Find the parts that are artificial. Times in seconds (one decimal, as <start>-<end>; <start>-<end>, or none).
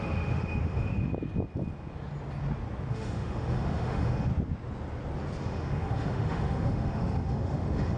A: 0.0-1.1; 2.9-4.3; 5.4-8.0